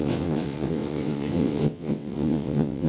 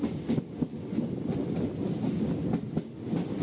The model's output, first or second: first